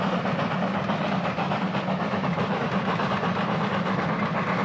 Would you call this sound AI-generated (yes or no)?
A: no